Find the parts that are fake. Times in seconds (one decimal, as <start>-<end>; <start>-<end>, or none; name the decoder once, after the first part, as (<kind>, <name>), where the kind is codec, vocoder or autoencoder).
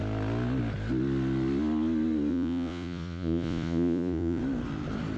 2.3-4.4 (vocoder, Vocos)